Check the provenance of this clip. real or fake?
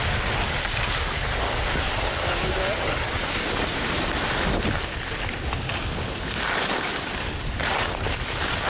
real